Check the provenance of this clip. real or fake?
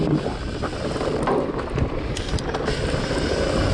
real